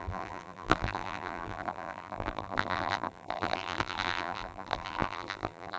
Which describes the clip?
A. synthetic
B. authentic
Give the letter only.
A